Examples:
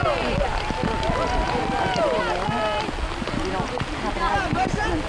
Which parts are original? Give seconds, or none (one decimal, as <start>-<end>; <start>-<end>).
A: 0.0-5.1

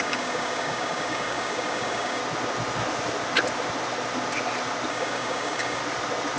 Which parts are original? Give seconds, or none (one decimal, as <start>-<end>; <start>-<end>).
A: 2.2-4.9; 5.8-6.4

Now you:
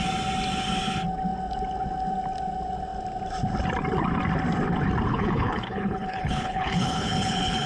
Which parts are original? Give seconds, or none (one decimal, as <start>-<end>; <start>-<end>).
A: 0.0-5.1

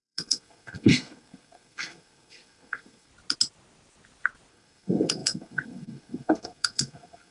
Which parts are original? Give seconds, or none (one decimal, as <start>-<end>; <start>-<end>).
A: 3.1-4.5

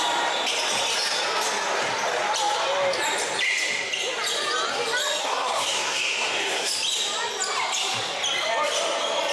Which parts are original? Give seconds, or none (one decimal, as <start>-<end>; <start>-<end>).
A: 0.0-5.2; 6.7-9.3

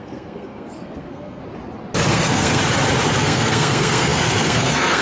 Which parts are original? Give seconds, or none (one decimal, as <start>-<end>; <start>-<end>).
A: 1.4-2.1; 2.6-3.2